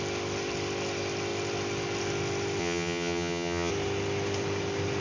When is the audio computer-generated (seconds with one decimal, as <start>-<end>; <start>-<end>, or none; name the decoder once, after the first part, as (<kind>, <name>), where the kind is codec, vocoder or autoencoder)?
2.6-3.7 (vocoder, HiFi-GAN)